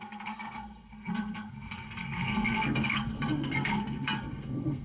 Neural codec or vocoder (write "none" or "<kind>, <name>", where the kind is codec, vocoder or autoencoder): codec, SNAC